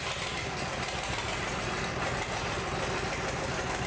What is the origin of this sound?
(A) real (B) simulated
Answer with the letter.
A